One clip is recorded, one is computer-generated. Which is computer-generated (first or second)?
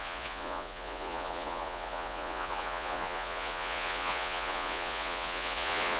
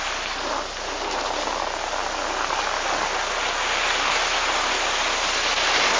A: first